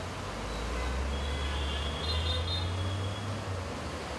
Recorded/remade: recorded